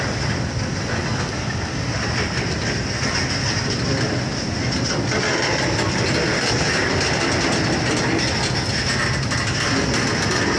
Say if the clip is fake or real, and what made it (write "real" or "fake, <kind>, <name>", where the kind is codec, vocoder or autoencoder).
real